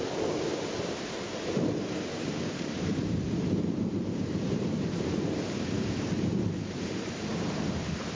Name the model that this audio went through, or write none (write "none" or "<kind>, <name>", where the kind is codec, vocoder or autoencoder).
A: vocoder, BigVGAN v2